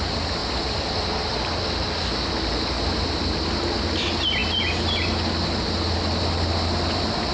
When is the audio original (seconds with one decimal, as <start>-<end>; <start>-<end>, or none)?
0.0-7.3